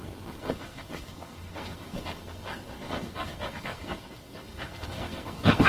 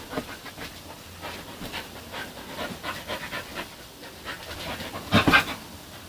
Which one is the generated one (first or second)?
first